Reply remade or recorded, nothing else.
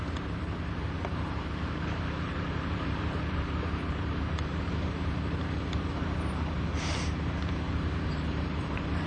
remade